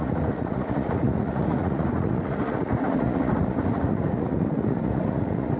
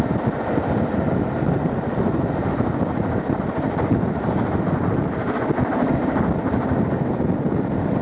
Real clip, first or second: second